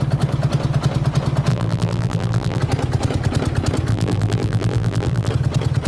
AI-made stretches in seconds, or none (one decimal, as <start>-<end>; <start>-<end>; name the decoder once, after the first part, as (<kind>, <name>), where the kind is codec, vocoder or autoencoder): 1.5-2.6 (vocoder, BigVGAN v2); 3.9-5.3

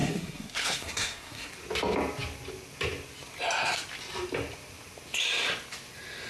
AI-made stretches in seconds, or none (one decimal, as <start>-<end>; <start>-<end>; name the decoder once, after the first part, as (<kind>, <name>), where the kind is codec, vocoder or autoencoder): 0.0-1.5 (codec, SNAC)

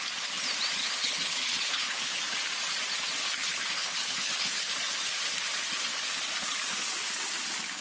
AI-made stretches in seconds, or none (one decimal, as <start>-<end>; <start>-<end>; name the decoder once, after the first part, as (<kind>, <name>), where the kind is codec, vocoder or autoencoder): 0.8-2.2 (codec, HILCodec); 3.2-4.7